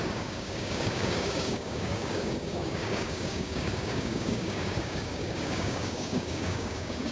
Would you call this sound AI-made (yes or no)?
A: yes